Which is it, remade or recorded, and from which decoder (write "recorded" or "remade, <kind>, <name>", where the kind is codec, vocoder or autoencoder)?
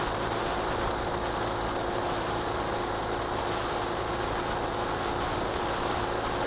recorded